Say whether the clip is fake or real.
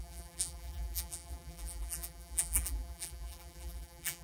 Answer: fake